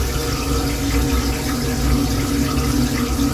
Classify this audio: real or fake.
real